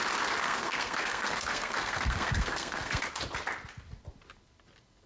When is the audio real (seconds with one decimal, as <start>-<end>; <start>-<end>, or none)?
0.0-0.4; 3.0-5.1